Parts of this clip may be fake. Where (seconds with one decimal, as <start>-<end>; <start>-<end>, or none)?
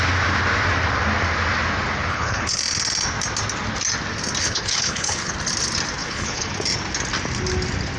2.1-2.6; 4.4-5.3; 6.0-6.5